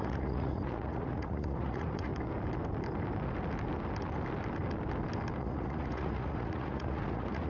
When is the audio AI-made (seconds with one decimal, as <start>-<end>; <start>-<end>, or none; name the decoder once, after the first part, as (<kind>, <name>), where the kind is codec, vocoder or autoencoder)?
0.0-2.1 (vocoder, Vocos); 5.4-7.5